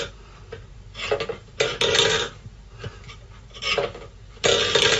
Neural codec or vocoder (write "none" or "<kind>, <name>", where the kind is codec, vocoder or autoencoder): none